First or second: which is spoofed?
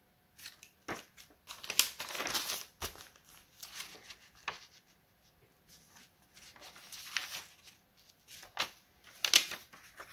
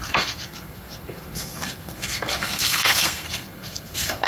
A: second